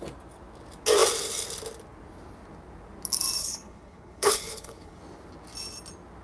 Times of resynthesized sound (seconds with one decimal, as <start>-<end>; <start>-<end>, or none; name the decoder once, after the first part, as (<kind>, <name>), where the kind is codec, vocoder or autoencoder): 3.4-5.0 (codec, HILCodec)